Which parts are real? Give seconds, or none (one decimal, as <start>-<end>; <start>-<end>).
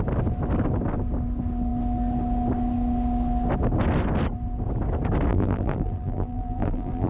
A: 0.0-5.3